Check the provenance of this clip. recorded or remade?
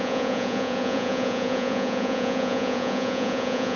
remade